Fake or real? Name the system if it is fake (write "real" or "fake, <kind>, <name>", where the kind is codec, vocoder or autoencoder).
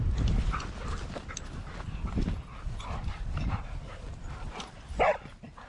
real